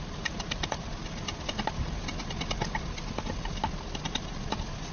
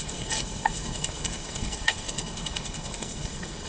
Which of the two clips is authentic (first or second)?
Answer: first